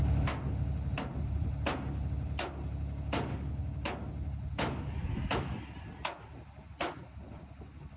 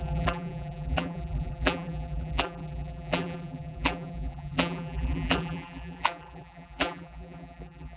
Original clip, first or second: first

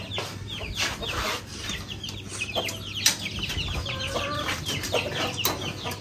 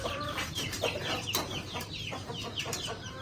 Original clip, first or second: first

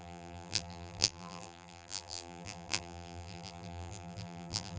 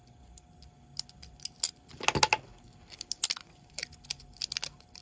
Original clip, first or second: second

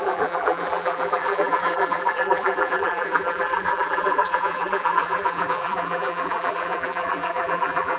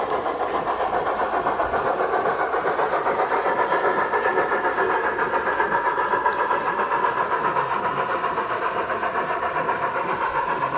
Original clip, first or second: second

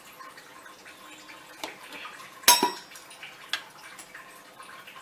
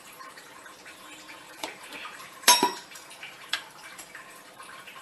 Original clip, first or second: first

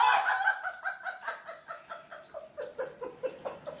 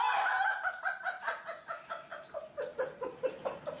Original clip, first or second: first